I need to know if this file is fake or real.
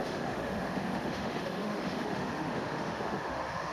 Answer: fake